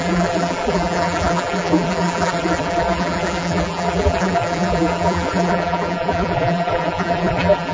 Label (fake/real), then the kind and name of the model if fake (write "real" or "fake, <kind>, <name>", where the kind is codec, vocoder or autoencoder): fake, vocoder, BigVGAN v2